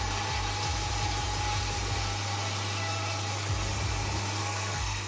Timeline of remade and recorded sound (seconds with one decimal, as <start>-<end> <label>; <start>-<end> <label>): 0.0-4.4 recorded; 4.4-5.1 remade